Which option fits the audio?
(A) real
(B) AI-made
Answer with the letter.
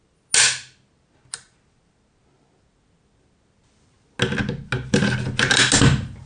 A